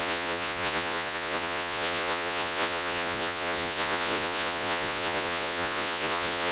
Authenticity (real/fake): fake